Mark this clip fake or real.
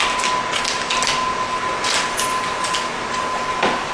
real